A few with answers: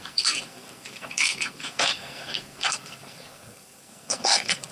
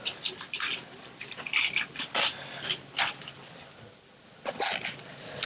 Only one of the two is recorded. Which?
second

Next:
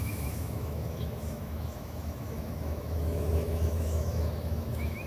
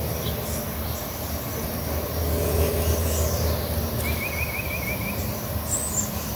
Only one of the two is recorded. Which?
second